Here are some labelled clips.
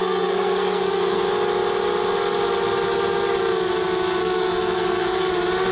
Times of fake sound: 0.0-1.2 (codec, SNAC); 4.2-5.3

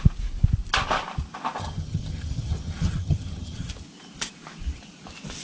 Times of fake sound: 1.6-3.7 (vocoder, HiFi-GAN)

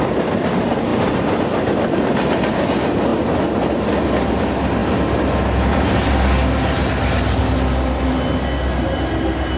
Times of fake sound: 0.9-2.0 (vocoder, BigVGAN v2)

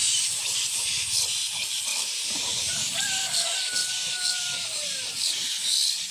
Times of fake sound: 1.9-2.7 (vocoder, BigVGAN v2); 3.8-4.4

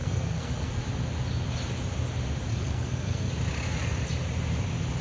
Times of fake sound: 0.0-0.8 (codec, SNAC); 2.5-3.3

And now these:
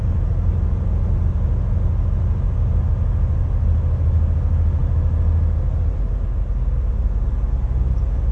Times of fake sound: none